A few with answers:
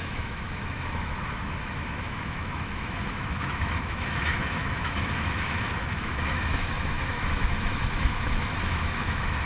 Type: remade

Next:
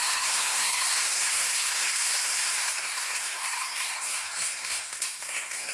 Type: remade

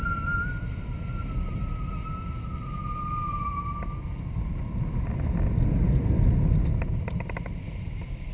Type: recorded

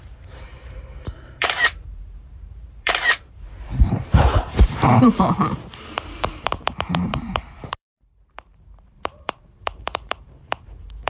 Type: remade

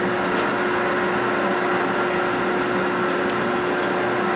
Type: recorded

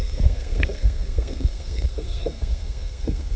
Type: remade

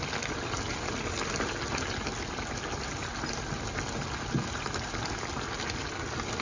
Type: recorded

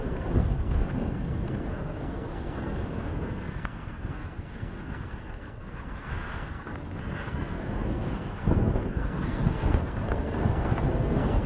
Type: remade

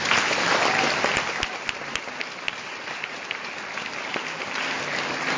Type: recorded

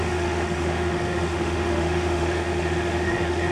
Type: remade